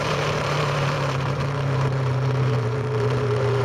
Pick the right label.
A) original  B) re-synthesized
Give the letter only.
B